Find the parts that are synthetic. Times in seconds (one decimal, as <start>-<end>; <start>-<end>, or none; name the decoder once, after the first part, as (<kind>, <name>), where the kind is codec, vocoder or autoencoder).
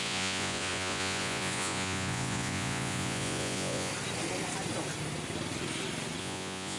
0.0-3.9 (vocoder, Vocos); 6.2-6.8